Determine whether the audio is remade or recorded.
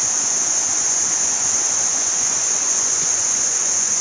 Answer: remade